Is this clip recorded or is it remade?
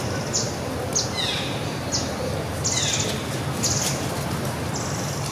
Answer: recorded